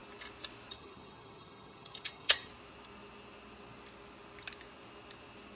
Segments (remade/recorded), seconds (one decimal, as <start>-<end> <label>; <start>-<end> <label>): 0.0-0.7 recorded; 0.7-2.5 remade; 2.5-5.6 recorded